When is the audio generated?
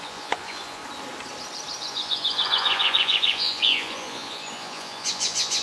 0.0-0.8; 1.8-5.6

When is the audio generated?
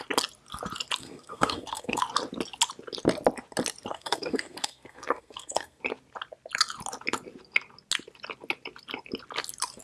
1.0-2.0; 3.9-5.8